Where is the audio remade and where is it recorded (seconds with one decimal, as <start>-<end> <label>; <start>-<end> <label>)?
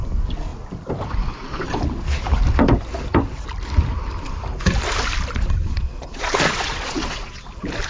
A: 0.0-5.6 recorded; 5.6-7.4 remade; 7.4-7.9 recorded